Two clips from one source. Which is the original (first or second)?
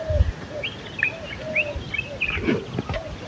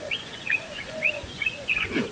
first